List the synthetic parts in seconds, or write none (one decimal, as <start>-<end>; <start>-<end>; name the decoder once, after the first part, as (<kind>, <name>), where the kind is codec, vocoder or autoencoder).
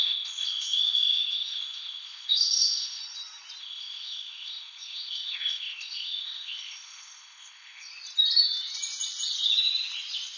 0.0-3.0 (codec, ZipCodec); 3.6-7.9